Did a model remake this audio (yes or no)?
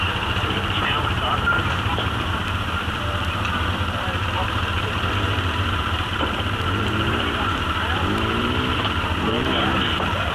yes